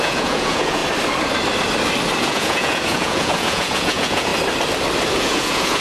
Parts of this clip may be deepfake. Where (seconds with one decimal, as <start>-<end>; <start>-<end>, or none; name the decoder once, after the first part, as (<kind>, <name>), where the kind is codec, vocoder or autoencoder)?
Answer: 0.0-0.8 (vocoder, Vocos); 2.2-4.3; 5.2-5.8

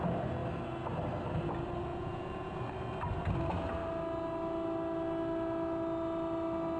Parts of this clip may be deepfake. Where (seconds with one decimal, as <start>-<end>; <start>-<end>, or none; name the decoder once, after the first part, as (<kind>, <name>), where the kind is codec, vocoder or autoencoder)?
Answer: 1.9-2.6 (vocoder, Vocos)